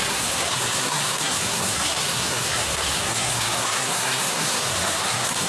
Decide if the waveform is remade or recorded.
remade